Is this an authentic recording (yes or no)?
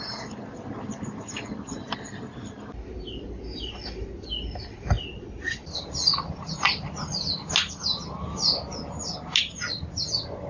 yes